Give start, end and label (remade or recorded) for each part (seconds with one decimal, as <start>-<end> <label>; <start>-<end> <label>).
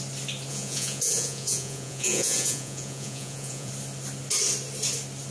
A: 0.0-0.5 recorded; 0.5-3.7 remade; 3.7-5.3 recorded